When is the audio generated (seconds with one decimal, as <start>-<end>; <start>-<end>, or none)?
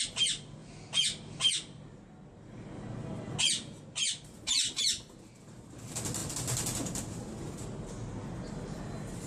none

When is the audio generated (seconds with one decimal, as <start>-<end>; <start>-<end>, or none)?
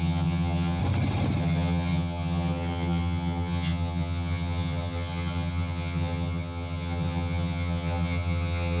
0.0-0.8; 1.4-8.8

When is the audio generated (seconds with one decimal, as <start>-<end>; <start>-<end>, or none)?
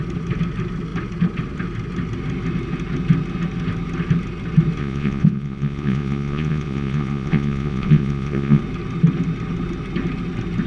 4.8-8.6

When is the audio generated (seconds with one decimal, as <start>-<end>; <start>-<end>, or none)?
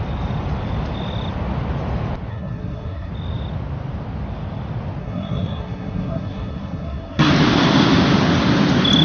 2.3-3.1; 5.0-7.3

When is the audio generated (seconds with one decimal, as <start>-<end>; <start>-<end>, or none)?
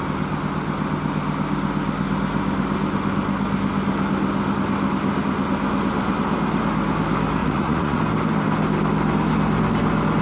7.4-8.0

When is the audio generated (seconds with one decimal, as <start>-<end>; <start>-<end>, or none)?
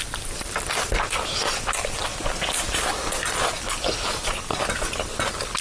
none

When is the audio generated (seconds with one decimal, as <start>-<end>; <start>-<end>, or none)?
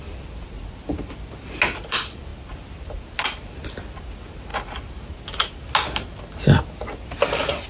2.3-3.1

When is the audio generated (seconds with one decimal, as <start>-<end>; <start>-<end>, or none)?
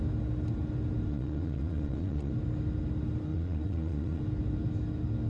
1.1-2.3; 3.3-4.2